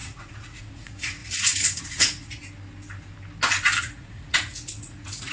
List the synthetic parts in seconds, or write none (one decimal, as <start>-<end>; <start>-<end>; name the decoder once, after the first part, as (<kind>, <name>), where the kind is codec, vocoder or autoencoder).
0.0-2.4 (vocoder, Vocos); 3.8-5.3